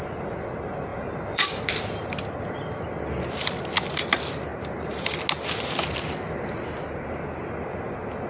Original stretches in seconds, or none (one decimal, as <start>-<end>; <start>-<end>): 0.0-0.9; 1.6-4.5; 5.2-8.3

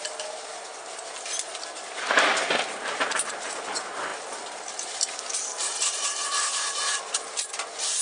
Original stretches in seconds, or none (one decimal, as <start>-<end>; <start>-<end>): 0.5-2.5

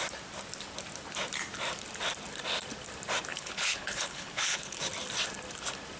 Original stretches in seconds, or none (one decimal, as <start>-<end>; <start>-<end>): 0.0-3.3; 4.8-6.0

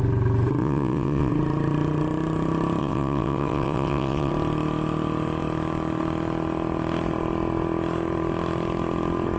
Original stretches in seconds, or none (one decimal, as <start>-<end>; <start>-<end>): 0.0-0.6; 1.3-2.8; 4.3-9.4

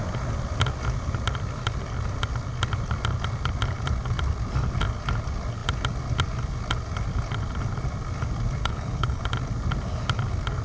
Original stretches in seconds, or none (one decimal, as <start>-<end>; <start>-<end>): 0.0-8.6; 9.2-10.6

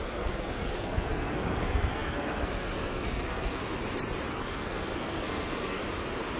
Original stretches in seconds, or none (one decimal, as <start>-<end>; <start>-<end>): 3.6-4.3; 5.8-6.4